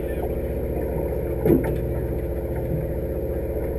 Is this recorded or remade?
recorded